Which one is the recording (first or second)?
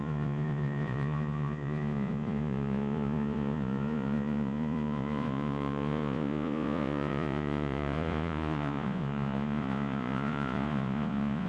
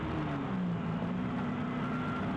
second